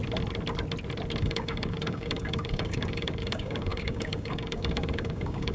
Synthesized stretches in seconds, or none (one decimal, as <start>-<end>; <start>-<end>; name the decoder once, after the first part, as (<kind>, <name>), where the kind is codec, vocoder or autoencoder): 1.2-5.5 (codec, DAC)